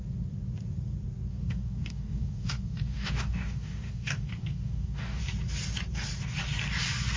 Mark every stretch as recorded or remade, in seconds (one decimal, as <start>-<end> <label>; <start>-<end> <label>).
0.0-1.3 recorded; 1.3-5.2 remade; 5.2-7.2 recorded